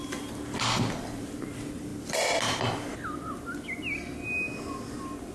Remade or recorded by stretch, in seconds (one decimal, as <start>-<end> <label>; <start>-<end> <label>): 0.0-5.3 recorded